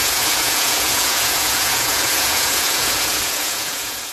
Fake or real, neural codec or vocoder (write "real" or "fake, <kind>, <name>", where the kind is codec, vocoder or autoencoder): fake, vocoder, Vocos